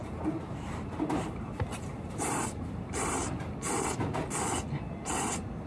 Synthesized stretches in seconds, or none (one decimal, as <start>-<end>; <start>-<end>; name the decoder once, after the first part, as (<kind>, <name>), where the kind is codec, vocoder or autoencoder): 0.0-3.2 (vocoder, BigVGAN v2); 4.7-5.7